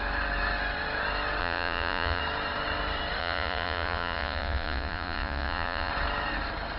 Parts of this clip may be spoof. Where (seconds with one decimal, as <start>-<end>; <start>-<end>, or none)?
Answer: 1.4-2.2; 3.2-5.9